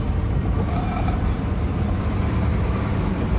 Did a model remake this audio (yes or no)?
yes